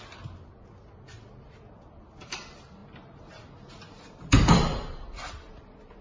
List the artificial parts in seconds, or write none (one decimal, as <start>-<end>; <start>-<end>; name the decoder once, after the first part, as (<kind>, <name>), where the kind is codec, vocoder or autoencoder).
2.8-6.0 (vocoder, BigVGAN v2)